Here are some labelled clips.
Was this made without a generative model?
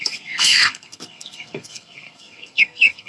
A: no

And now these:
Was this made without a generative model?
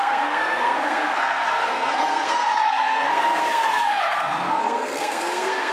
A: no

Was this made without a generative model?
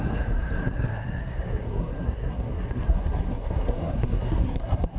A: no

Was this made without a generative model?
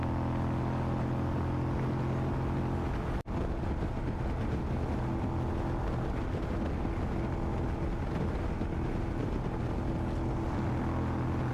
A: yes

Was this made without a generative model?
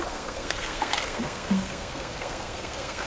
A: no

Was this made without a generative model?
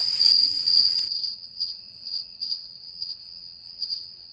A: no